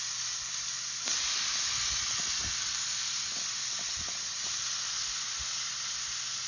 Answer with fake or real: real